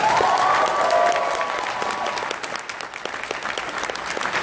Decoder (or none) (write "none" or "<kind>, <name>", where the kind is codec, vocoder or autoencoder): none